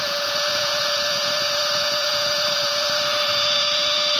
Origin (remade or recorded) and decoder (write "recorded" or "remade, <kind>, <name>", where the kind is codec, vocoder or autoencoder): remade, vocoder, Vocos